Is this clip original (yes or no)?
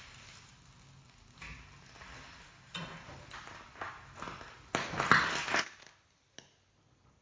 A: yes